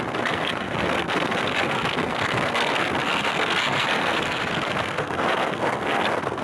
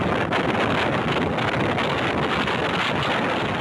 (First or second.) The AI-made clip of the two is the first